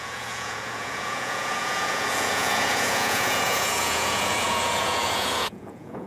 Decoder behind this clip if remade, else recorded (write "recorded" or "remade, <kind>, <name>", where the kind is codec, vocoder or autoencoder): remade, vocoder, Vocos